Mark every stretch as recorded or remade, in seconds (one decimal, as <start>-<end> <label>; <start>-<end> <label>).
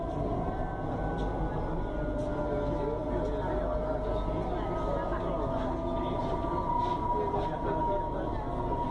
0.0-8.9 recorded